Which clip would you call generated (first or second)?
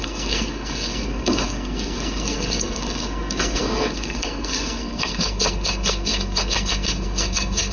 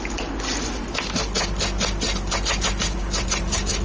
first